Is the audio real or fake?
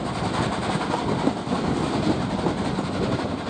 real